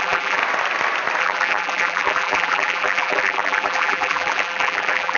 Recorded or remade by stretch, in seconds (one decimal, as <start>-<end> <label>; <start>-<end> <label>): 0.0-0.4 remade; 0.4-1.2 recorded; 1.2-5.2 remade